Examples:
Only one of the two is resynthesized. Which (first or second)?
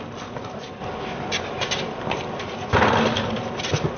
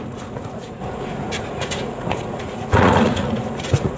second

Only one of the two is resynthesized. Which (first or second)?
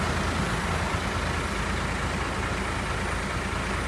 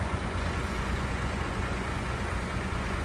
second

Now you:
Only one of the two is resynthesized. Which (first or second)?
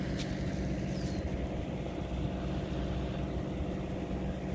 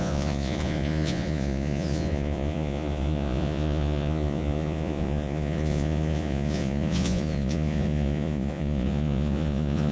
second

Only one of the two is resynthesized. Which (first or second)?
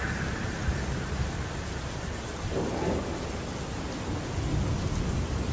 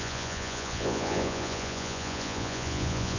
second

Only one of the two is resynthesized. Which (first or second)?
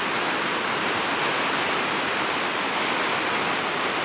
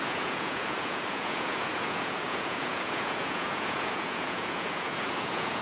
second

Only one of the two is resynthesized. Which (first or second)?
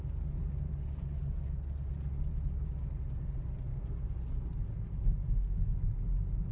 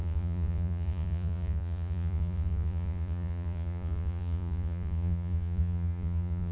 second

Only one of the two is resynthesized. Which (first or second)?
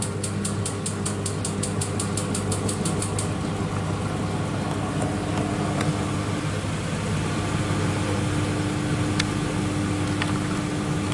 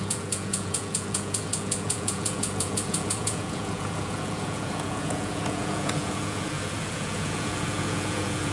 second